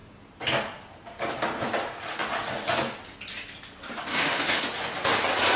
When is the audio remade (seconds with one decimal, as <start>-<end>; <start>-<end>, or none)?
4.1-4.6